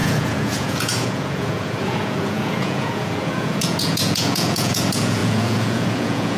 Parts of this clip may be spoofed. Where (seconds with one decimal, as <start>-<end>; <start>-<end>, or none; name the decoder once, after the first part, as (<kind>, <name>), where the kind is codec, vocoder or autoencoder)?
0.0-6.4 (vocoder, Vocos)